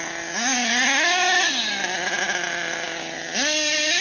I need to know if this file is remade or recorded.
recorded